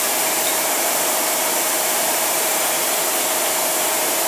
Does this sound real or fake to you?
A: fake